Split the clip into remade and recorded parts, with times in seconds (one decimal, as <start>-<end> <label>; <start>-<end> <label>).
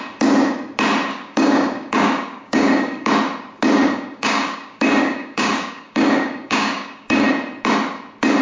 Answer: 0.0-1.1 recorded; 1.1-3.1 remade; 3.1-3.8 recorded; 3.8-7.3 remade; 7.3-8.4 recorded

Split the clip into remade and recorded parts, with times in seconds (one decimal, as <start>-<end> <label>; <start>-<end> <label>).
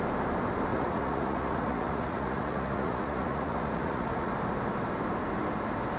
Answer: 0.0-0.7 recorded; 0.7-4.3 remade; 4.3-6.0 recorded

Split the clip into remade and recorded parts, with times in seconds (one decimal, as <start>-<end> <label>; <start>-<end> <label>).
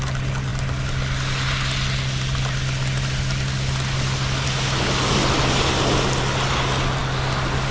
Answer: 0.0-7.7 recorded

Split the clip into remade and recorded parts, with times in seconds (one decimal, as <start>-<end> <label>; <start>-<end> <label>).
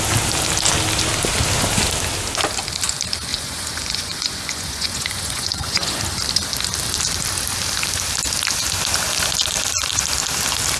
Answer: 0.0-3.3 recorded; 3.3-6.0 remade; 6.0-10.8 recorded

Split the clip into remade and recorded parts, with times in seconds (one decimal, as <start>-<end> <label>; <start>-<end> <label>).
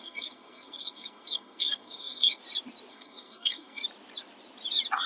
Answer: 0.0-2.4 remade; 2.4-2.9 recorded; 2.9-3.8 remade; 3.8-5.1 recorded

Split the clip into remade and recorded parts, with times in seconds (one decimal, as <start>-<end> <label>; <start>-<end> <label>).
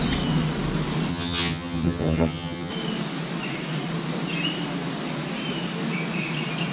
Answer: 0.0-1.1 recorded; 1.1-2.7 remade; 2.7-6.7 recorded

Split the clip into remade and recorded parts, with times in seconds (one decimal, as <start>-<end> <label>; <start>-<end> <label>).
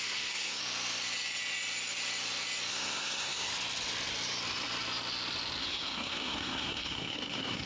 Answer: 0.0-0.6 remade; 0.6-2.7 recorded; 2.7-3.5 remade; 3.5-5.6 recorded; 5.6-7.7 remade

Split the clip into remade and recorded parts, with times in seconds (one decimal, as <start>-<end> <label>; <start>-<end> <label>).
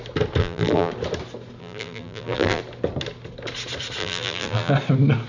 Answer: 0.0-0.4 recorded; 0.4-0.9 remade; 0.9-1.6 recorded; 1.6-2.6 remade; 2.6-4.0 recorded; 4.0-4.7 remade; 4.7-5.3 recorded